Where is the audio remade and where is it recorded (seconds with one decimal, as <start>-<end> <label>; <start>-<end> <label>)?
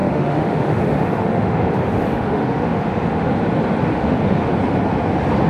0.0-3.3 remade; 3.3-3.9 recorded; 3.9-4.5 remade; 4.5-5.5 recorded